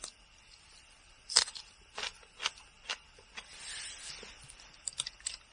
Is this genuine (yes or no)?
yes